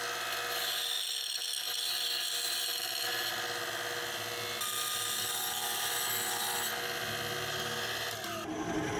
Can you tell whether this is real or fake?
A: real